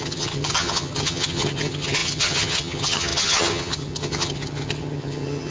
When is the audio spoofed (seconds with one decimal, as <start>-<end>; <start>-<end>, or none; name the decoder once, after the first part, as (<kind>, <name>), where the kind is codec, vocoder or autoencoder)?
0.0-5.5 (vocoder, HiFi-GAN)